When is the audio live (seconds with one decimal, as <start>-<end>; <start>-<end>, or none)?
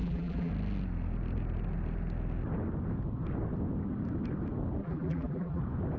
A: 0.5-4.8; 5.6-6.0